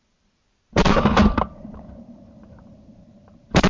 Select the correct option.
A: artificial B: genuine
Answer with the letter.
A